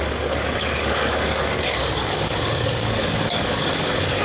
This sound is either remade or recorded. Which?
remade